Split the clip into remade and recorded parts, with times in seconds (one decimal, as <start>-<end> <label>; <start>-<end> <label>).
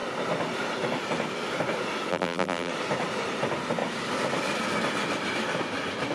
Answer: 0.0-2.1 recorded; 2.1-2.7 remade; 2.7-6.1 recorded